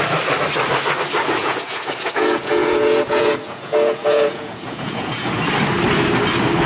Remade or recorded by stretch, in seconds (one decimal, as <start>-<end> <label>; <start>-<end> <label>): 0.0-1.4 recorded; 1.4-5.4 remade; 5.4-6.7 recorded